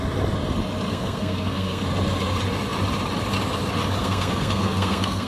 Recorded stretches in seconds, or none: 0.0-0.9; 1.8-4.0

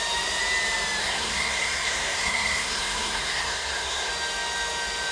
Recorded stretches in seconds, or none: 0.0-1.0; 4.1-5.1

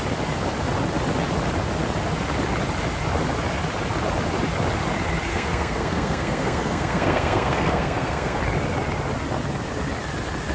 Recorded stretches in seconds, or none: 0.0-5.3; 8.4-10.5

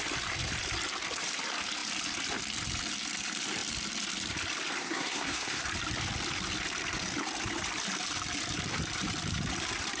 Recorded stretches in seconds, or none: 0.0-4.8; 5.6-10.0

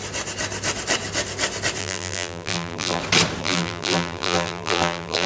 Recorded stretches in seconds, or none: 0.0-1.8; 3.0-3.4

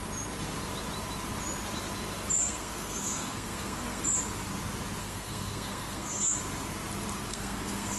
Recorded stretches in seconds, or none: 0.0-2.4; 4.0-5.0; 6.4-7.3